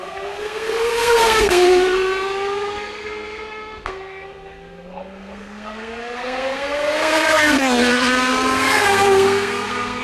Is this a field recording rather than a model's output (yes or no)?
no